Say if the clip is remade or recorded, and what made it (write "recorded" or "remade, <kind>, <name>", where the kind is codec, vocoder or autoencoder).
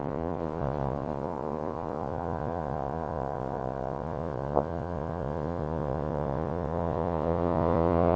remade, vocoder, Vocos